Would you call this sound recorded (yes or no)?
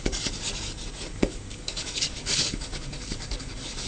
no